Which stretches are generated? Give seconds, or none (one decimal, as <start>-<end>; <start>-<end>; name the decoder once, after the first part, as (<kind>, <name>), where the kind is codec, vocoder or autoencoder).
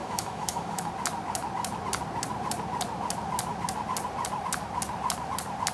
0.0-0.9 (autoencoder, DAC-VAE)